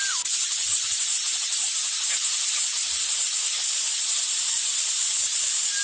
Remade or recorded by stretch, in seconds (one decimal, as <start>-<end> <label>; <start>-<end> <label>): 0.0-5.8 recorded